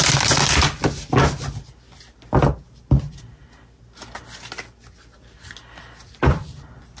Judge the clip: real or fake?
real